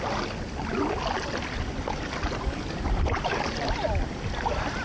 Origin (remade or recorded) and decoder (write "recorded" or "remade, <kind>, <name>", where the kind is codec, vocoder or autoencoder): remade, vocoder, BigVGAN v2